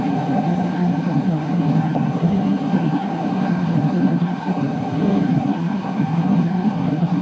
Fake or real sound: fake